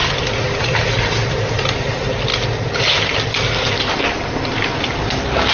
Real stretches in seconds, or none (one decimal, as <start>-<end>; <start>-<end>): 0.0-1.7; 2.3-4.4